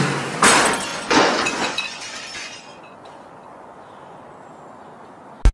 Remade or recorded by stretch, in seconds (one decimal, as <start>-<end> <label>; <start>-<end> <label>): 0.0-0.9 recorded; 0.9-4.2 remade; 4.2-5.5 recorded